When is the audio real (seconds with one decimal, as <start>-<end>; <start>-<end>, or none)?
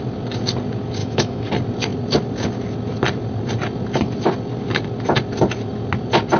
0.0-1.0; 1.5-6.4